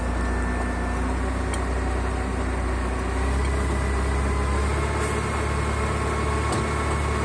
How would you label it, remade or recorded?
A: recorded